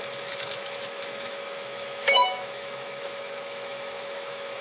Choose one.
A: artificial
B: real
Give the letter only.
A